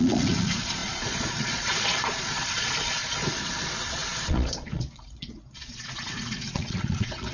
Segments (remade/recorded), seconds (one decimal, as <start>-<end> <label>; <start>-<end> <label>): 0.0-7.3 remade